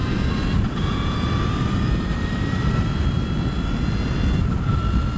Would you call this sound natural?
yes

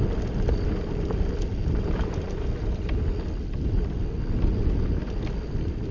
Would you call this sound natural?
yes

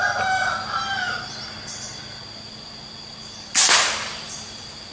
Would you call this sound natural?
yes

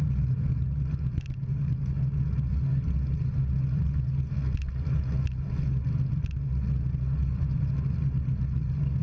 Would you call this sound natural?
yes